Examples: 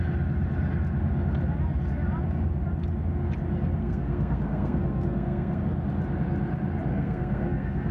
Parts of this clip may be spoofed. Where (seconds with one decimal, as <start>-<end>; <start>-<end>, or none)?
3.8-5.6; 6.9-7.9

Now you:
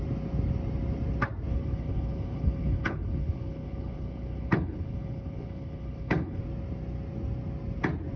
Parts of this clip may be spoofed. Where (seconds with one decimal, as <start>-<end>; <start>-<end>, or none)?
1.5-6.4

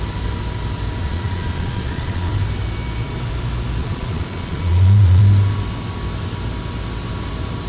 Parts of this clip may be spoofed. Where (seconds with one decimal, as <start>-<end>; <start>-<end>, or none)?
1.0-2.3; 3.8-5.2

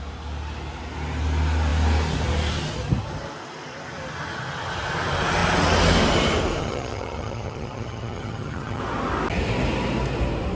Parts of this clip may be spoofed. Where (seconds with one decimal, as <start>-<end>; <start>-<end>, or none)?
6.6-8.8

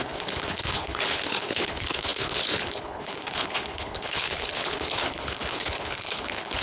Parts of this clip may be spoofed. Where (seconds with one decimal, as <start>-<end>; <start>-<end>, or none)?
0.0-6.6

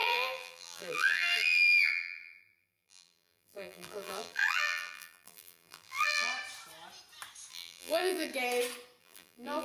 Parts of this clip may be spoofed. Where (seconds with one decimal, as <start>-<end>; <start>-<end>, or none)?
0.0-6.3; 7.5-8.3; 9.0-9.6